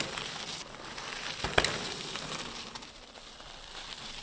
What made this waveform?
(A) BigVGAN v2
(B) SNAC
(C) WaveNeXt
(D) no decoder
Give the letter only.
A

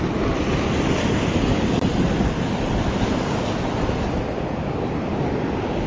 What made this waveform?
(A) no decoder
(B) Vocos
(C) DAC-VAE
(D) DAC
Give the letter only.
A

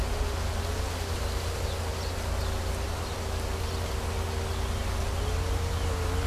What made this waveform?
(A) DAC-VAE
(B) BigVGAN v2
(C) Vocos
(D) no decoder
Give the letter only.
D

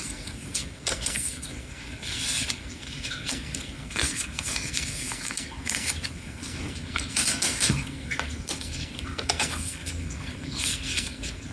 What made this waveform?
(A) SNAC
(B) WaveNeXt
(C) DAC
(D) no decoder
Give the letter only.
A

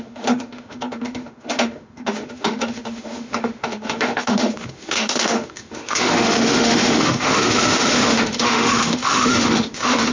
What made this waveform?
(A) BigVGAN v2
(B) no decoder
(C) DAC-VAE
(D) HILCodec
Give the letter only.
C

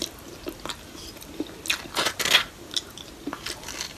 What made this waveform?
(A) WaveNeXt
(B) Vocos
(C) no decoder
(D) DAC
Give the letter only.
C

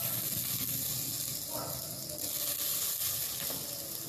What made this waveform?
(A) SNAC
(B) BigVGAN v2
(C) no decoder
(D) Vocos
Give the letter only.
C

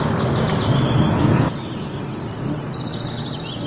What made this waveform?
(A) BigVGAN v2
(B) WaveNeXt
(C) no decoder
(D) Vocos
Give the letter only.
C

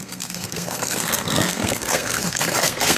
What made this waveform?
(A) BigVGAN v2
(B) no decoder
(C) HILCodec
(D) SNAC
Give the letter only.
D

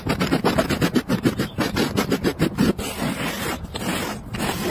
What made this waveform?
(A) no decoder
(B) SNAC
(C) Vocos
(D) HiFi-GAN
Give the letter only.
A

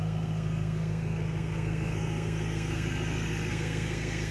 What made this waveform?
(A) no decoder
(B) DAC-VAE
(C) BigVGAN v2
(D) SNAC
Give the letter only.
D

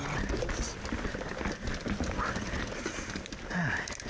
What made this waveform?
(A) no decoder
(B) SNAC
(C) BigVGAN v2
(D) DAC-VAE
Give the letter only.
A